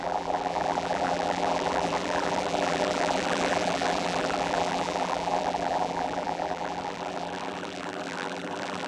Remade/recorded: remade